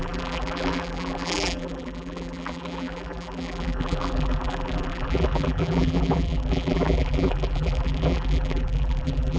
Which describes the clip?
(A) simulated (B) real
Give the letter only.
A